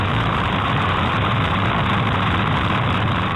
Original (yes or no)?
no